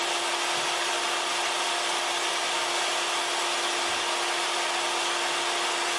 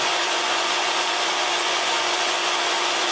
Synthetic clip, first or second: second